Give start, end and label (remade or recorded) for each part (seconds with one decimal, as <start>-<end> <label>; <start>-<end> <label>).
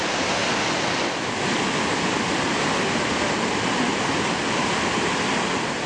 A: 0.0-5.9 recorded